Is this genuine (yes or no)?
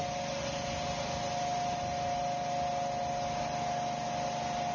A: yes